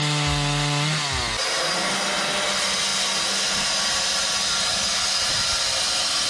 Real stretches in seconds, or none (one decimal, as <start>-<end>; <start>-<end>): 0.0-6.3